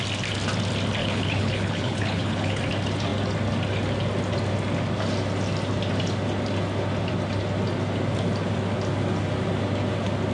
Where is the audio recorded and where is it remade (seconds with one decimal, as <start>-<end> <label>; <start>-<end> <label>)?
0.0-1.0 recorded; 1.0-2.6 remade; 2.6-10.3 recorded